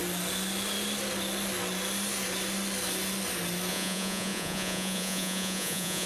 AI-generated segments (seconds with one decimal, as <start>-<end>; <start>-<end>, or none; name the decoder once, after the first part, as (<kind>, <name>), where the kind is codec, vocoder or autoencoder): 3.7-6.1 (vocoder, Vocos)

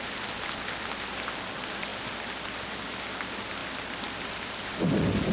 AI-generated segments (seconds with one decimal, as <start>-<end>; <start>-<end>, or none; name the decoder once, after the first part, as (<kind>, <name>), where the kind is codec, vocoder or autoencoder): 1.9-2.7 (vocoder, BigVGAN v2); 3.6-4.8

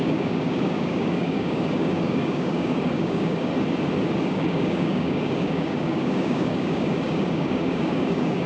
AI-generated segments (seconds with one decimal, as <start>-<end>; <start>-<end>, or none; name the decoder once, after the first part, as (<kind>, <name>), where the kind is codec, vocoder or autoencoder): 0.0-3.5 (codec, DAC); 4.2-8.5

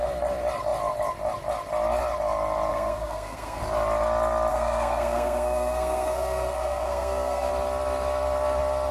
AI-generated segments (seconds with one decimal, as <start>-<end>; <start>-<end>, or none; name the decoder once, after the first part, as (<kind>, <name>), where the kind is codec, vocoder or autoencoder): 2.7-3.6 (codec, SNAC); 4.5-7.5